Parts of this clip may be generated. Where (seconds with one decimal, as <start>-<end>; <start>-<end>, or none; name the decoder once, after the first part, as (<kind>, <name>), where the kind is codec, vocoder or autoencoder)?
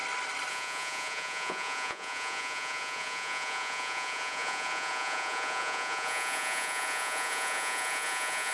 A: 0.5-8.5 (vocoder, Vocos)